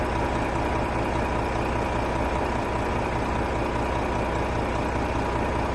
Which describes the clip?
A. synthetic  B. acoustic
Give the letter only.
B